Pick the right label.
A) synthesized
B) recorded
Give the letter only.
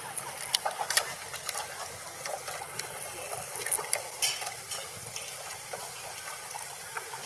B